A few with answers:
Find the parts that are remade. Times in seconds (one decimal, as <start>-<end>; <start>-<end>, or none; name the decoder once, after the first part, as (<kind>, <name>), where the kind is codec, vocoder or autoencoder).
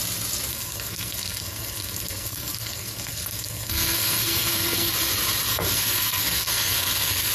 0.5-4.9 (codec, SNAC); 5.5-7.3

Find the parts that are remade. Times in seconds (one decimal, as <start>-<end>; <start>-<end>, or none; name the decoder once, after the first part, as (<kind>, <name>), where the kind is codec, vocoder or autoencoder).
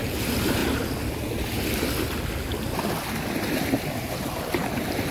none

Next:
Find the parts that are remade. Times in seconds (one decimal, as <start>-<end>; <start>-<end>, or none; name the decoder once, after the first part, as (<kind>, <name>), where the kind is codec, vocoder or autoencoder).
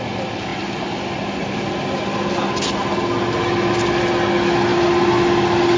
none